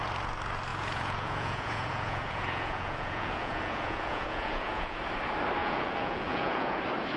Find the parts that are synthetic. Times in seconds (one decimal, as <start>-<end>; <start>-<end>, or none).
0.7-5.0; 5.6-6.8